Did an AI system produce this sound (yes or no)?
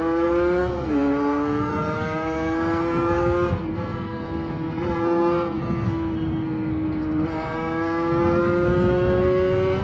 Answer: yes